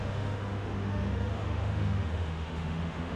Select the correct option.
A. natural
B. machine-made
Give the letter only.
B